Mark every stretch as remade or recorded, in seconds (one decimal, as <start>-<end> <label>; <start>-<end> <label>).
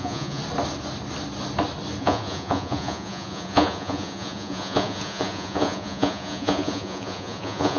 0.0-0.4 remade; 0.4-2.0 recorded; 2.0-7.8 remade